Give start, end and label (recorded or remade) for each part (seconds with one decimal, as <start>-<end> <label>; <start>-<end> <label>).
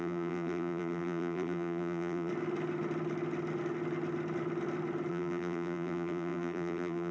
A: 0.0-2.3 remade; 2.3-5.1 recorded; 5.1-7.1 remade